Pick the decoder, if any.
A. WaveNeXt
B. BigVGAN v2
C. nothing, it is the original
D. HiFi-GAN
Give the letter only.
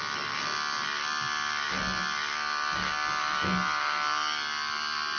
C